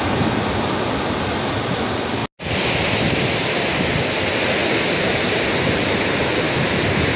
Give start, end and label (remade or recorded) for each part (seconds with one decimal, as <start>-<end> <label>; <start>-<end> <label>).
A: 0.0-7.2 recorded